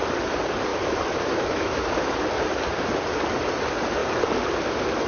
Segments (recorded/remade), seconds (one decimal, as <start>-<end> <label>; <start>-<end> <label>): 0.0-0.7 recorded; 0.7-2.1 remade; 2.1-5.1 recorded